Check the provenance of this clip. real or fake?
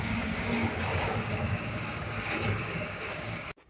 fake